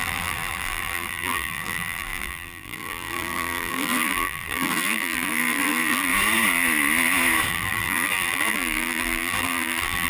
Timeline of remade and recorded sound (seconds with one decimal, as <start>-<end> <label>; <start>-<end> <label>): 0.0-6.1 remade; 6.1-7.5 recorded; 7.5-10.1 remade